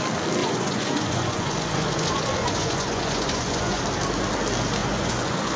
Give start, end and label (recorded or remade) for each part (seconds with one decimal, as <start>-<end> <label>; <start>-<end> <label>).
0.0-0.4 recorded; 0.4-3.8 remade; 3.8-4.8 recorded; 4.8-5.6 remade